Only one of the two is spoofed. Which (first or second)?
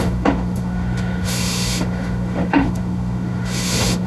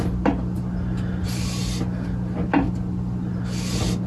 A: first